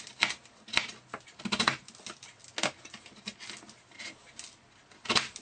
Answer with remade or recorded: recorded